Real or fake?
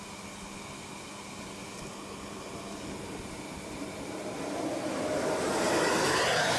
real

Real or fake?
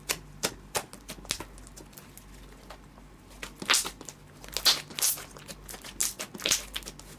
real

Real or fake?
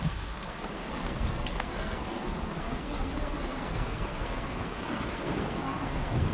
fake